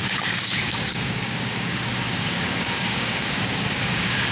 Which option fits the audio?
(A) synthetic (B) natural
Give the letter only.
A